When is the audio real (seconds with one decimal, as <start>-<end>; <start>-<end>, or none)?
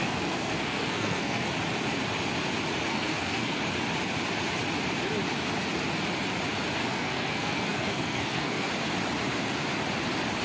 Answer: 1.5-2.9; 3.6-6.8; 8.7-10.4